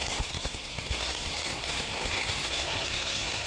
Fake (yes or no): yes